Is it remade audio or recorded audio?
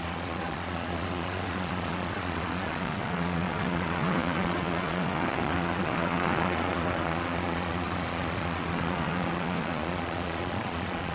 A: remade